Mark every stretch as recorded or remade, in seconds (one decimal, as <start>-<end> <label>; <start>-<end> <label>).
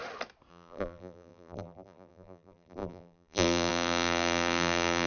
0.0-0.5 recorded; 0.5-5.1 remade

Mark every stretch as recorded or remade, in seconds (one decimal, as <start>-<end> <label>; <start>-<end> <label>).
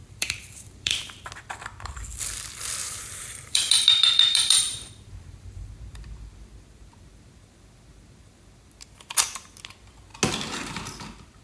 0.0-1.3 remade; 1.3-2.8 recorded; 2.8-5.7 remade; 5.7-11.4 recorded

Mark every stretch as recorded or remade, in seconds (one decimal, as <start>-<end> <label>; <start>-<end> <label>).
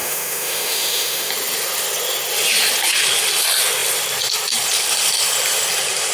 0.0-1.3 remade; 1.3-6.1 recorded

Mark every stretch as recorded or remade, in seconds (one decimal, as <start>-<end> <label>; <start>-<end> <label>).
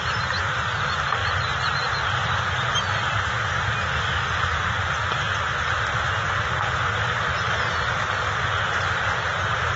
0.0-1.2 recorded; 1.2-1.8 remade; 1.8-7.3 recorded; 7.3-7.9 remade; 7.9-9.2 recorded; 9.2-9.8 remade